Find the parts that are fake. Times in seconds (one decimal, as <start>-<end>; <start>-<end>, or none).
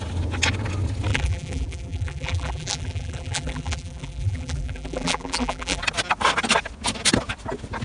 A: 1.1-5.8